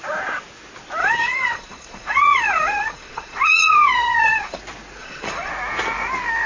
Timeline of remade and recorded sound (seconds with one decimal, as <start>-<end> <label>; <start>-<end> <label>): 0.0-1.0 recorded; 1.0-4.6 remade; 4.6-5.0 recorded; 5.0-5.5 remade; 5.5-6.5 recorded